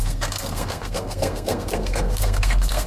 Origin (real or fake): fake